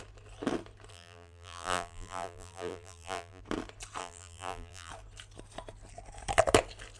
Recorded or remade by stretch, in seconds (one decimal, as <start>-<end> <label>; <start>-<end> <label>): 0.0-0.9 recorded; 0.9-3.4 remade; 3.4-4.0 recorded; 4.0-4.9 remade; 4.9-7.0 recorded